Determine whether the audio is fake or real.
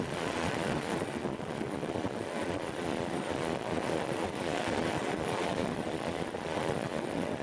fake